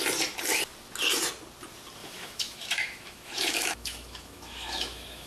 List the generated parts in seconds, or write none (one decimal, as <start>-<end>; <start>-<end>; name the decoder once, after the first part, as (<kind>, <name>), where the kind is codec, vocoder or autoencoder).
2.0-5.3 (autoencoder, DAC-VAE)